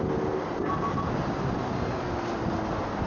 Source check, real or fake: real